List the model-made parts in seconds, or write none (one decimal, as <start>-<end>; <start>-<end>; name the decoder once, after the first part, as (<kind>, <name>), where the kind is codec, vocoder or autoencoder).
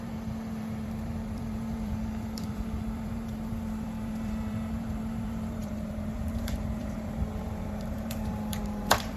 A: 0.0-9.2 (vocoder, BigVGAN v2)